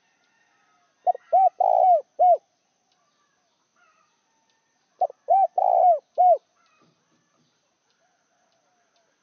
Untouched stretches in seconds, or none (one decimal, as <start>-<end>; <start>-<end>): 0.0-3.7; 8.6-9.2